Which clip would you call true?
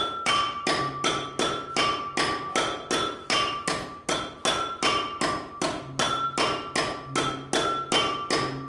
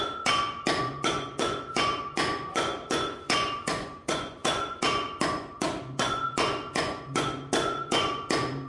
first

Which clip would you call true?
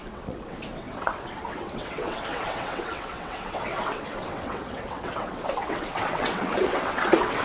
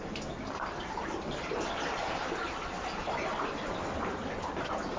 second